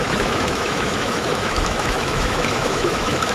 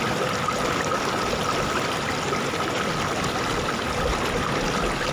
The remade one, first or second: first